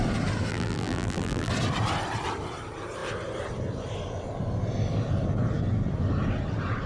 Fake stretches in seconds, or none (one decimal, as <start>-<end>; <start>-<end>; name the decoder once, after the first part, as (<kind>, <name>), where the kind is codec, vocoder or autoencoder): 0.5-1.5 (vocoder, BigVGAN v2)